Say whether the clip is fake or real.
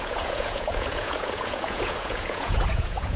fake